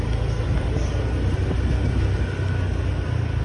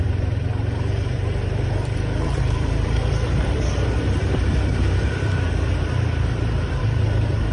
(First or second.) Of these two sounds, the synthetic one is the second